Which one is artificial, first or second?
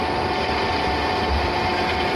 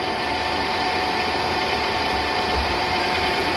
second